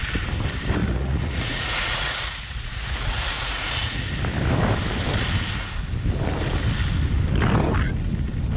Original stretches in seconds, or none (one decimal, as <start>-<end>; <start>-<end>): 0.0-0.8; 4.1-8.6